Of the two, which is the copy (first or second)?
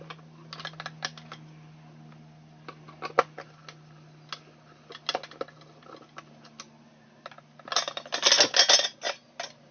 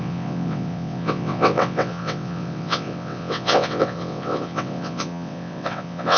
second